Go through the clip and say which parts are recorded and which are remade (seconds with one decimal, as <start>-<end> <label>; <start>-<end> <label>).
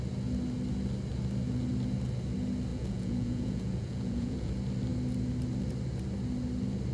0.0-2.7 recorded; 2.7-4.5 remade; 4.5-6.9 recorded